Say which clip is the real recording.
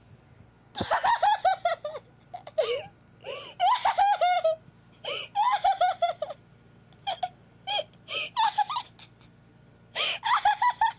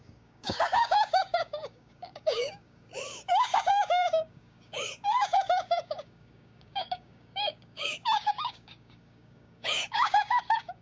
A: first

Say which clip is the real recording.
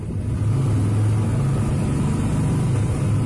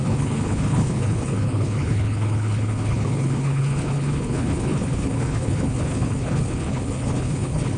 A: first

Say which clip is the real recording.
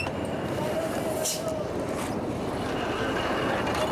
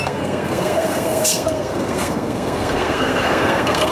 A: first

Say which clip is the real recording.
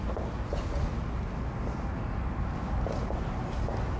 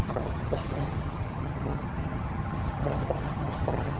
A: first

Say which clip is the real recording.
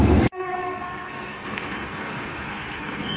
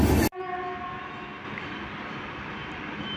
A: second